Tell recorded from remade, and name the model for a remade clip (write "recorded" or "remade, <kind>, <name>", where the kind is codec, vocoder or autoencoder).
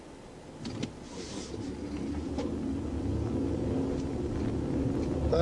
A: recorded